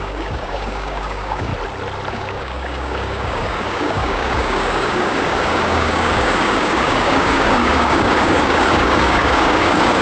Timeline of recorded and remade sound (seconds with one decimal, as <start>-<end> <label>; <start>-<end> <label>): 0.0-1.5 remade; 1.5-2.1 recorded; 2.1-10.0 remade